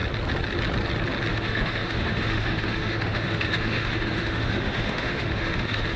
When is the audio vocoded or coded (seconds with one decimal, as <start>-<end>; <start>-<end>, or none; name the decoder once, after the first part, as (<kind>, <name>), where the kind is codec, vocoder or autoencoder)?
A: 1.3-6.0 (autoencoder, DAC-VAE)